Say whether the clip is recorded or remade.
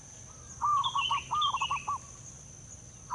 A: recorded